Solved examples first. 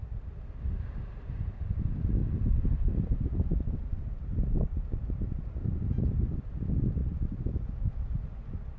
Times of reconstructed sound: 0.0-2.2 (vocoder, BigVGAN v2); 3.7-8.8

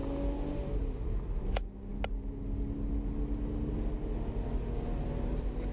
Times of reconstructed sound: none

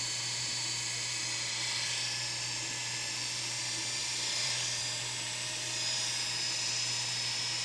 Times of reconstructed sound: 4.0-4.8 (vocoder, BigVGAN v2)